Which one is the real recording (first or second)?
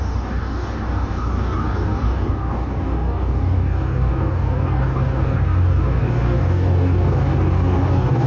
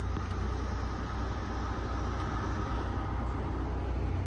second